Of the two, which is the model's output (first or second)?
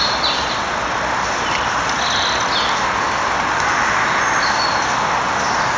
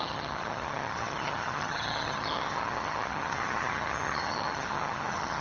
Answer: second